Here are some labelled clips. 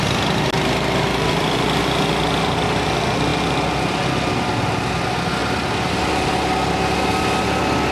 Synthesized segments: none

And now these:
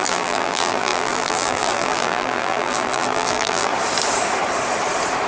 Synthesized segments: 0.0-3.7 (vocoder, BigVGAN v2)

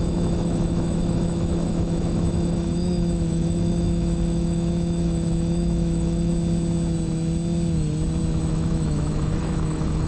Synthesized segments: 0.0-6.3 (autoencoder, DAC-VAE); 8.5-10.1

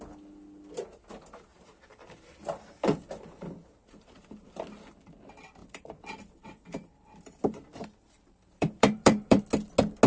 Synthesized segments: 1.5-4.3 (vocoder, BigVGAN v2); 5.6-9.4